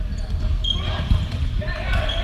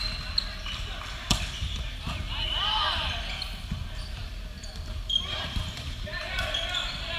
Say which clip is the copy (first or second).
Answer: second